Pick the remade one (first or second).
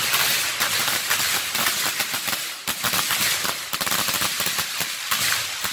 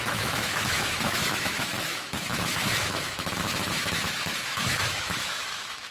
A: second